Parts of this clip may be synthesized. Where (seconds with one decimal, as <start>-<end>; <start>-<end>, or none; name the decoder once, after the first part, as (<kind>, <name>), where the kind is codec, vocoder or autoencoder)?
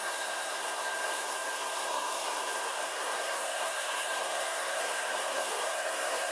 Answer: 0.0-6.3 (codec, SNAC)